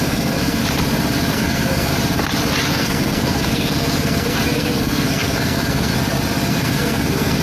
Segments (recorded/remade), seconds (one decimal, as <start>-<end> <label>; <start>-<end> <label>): 0.0-0.6 remade; 0.6-1.3 recorded; 1.3-1.9 remade; 1.9-2.7 recorded; 2.7-5.9 remade; 5.9-6.5 recorded; 6.5-7.4 remade